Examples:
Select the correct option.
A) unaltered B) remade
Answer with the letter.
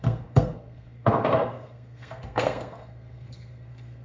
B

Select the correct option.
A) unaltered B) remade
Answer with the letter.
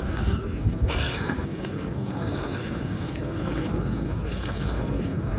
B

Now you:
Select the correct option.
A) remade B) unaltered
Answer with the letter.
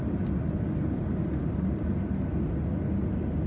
B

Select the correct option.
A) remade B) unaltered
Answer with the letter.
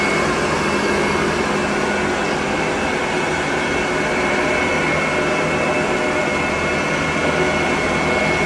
B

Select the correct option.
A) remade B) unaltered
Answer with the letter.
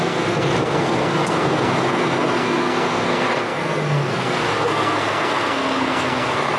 A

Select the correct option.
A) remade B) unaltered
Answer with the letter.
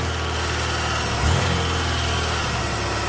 B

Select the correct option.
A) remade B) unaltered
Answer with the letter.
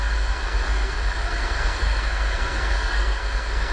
A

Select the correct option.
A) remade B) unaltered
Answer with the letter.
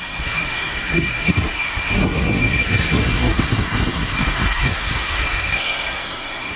A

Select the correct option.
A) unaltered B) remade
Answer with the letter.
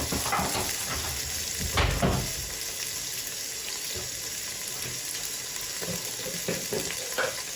A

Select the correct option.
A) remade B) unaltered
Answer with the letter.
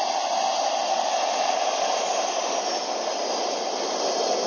B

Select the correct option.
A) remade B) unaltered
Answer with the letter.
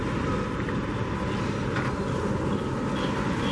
B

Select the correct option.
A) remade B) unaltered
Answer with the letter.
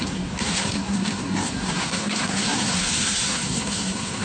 A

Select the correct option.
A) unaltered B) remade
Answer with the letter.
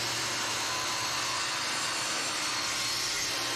A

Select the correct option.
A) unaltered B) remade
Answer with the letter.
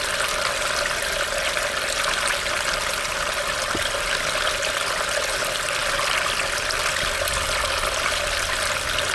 A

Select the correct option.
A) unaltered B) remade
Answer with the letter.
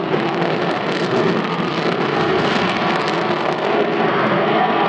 B